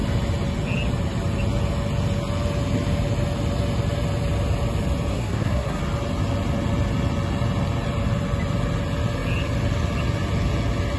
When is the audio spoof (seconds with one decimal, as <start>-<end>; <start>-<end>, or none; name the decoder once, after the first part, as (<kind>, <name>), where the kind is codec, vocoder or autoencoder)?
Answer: 5.1-5.8 (codec, SNAC)